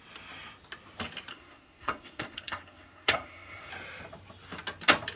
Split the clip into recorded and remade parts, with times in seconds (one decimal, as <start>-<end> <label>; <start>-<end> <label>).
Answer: 0.0-1.3 recorded; 1.3-3.7 remade; 3.7-5.2 recorded